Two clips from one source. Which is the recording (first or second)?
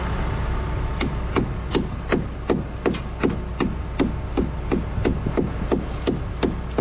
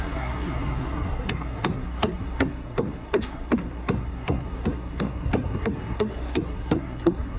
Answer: first